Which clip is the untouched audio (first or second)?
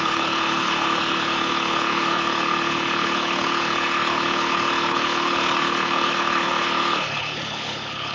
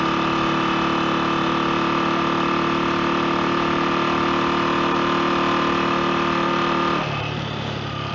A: second